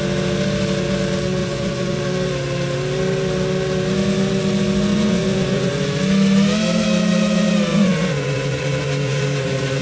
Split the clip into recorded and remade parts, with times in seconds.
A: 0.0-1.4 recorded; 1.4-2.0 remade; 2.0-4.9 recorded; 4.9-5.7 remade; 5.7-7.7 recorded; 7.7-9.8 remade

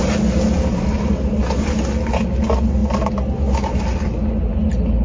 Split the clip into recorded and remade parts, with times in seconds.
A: 0.0-5.0 recorded